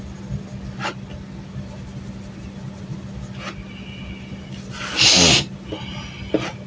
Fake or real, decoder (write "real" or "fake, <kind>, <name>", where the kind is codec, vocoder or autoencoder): real